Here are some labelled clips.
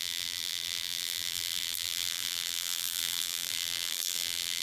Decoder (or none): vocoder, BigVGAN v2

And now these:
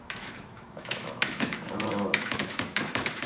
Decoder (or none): autoencoder, DAC-VAE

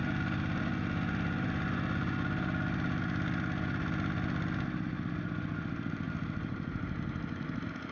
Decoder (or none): none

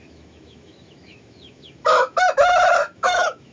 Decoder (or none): autoencoder, DAC-VAE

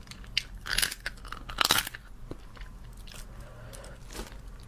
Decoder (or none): none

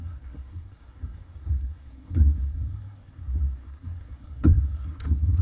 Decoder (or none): codec, SNAC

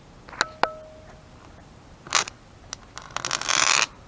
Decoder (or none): none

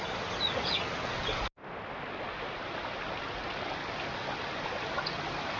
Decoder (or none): none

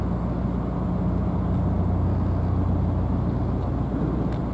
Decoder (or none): none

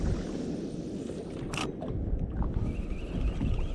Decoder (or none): none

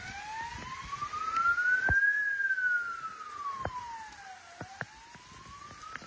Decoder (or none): none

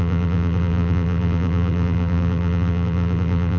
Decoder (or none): vocoder, BigVGAN v2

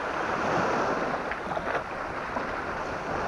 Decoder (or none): none